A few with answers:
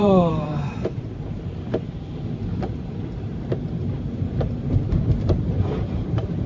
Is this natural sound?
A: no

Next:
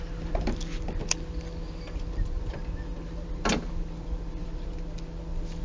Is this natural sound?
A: yes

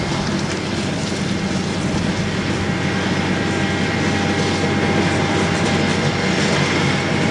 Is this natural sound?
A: yes